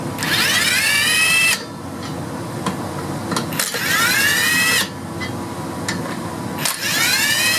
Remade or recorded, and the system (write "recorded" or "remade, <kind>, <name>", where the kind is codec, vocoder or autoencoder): recorded